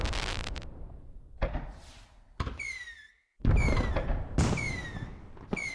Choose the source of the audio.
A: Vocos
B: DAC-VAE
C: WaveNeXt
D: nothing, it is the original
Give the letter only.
D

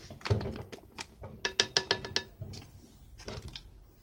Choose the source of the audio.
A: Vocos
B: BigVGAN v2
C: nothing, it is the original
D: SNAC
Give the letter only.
C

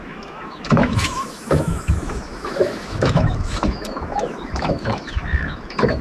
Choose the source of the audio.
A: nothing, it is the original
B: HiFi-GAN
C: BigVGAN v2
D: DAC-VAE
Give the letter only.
D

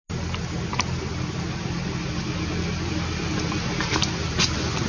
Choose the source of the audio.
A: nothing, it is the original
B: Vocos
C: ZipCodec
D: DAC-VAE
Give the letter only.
A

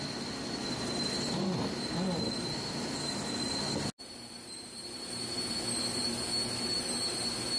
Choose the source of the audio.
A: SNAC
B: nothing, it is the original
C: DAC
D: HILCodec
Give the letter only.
B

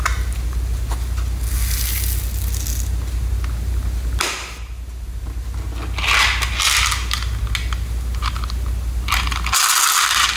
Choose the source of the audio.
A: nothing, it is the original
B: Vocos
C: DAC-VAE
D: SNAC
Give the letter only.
A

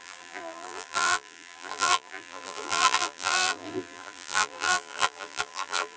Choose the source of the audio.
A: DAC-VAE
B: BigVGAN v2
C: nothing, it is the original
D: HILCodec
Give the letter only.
B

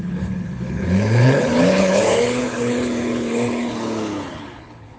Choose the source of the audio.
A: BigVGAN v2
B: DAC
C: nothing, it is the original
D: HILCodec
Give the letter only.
D